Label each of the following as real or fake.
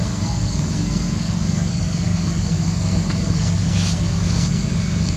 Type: fake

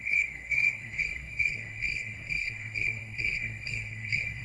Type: fake